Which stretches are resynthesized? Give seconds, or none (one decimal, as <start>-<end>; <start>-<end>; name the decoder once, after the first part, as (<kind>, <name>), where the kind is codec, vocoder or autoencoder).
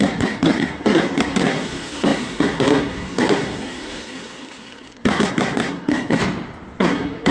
0.0-6.2 (codec, SNAC); 6.8-7.3